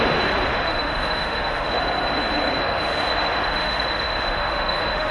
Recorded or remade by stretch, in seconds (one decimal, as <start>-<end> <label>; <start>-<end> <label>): 0.0-0.5 recorded; 0.5-1.8 remade; 1.8-2.6 recorded; 2.6-5.1 remade